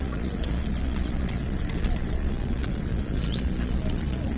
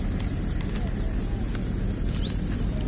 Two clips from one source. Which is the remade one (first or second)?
first